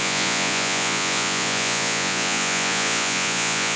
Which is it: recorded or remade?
remade